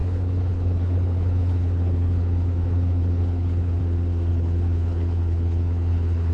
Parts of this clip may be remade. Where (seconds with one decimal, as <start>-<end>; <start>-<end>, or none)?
0.0-3.8; 4.3-6.3